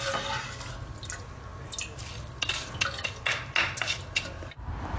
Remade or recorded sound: recorded